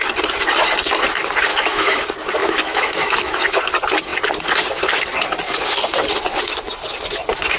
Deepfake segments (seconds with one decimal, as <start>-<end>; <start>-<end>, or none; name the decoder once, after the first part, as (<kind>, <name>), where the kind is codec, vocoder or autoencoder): 1.5-2.0 (autoencoder, DAC-VAE); 2.4-3.6